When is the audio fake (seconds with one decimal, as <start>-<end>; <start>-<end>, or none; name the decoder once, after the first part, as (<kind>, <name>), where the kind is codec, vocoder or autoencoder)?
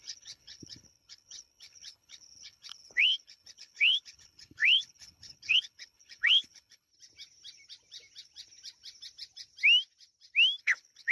0.0-6.9 (codec, HILCodec); 10.6-11.1